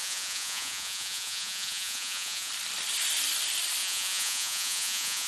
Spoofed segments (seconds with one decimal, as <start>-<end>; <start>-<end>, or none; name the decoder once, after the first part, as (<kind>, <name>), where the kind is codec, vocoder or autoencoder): 0.0-2.5 (vocoder, Vocos); 3.8-5.3